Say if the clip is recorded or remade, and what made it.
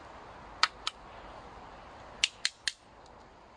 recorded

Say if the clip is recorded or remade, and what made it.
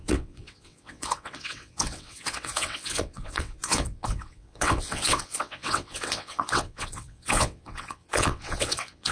remade, vocoder, WaveNeXt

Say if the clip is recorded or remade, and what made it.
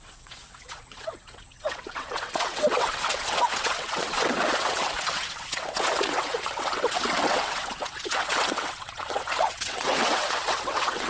remade, vocoder, WaveNeXt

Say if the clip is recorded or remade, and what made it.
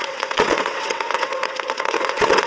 remade, vocoder, WaveNeXt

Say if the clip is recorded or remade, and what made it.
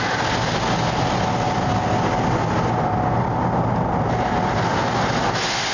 recorded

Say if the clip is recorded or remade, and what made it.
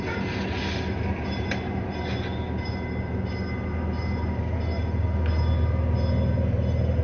recorded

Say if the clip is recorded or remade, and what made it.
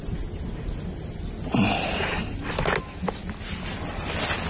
recorded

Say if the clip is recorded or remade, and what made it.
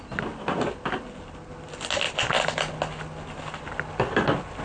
recorded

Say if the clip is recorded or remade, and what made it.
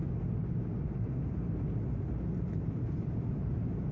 recorded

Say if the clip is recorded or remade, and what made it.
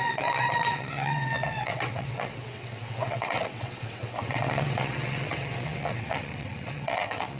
remade, vocoder, WaveNeXt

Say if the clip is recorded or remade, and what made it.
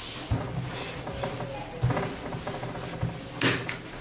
recorded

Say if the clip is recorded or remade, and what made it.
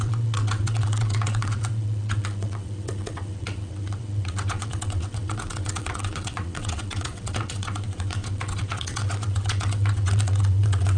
remade, vocoder, WaveNeXt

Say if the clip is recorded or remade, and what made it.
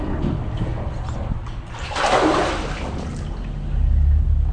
recorded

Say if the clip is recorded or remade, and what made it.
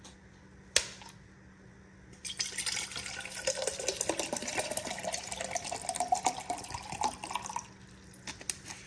recorded